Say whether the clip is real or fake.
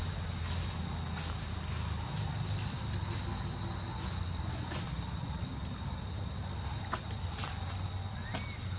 real